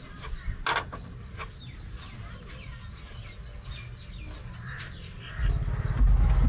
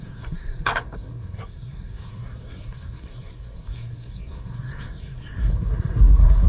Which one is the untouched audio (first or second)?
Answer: first